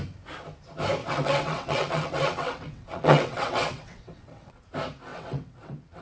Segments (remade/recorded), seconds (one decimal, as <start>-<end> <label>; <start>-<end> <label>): 0.0-1.0 recorded; 1.0-4.6 remade; 4.6-5.1 recorded; 5.1-6.0 remade

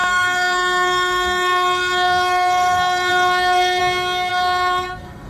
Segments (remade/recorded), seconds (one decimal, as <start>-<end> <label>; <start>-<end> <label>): 0.0-3.8 remade; 3.8-4.3 recorded; 4.3-5.3 remade

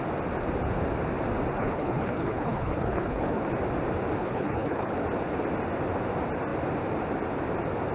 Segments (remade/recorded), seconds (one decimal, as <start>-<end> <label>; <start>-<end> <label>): 0.0-1.5 recorded; 1.5-3.5 remade; 3.5-4.2 recorded; 4.2-4.9 remade; 4.9-7.9 recorded

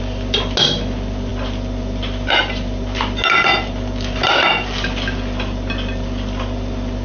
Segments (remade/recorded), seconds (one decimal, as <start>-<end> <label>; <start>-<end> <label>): 0.0-7.0 recorded

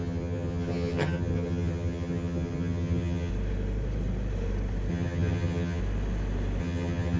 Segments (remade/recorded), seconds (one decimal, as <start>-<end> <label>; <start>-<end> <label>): 0.0-3.3 remade; 3.3-4.9 recorded; 4.9-5.8 remade; 5.8-6.6 recorded; 6.6-7.2 remade

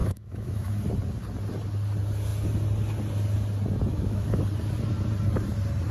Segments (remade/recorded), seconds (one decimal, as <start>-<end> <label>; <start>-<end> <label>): 0.0-0.7 remade; 0.7-3.9 recorded; 3.9-4.4 remade; 4.4-5.9 recorded